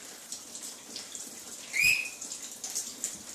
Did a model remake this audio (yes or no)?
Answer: no